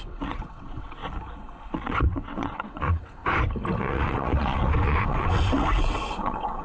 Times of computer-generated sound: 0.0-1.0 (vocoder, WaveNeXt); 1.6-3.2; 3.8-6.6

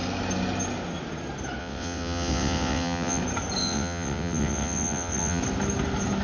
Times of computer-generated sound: 1.6-3.2 (vocoder, WaveNeXt); 3.6-5.4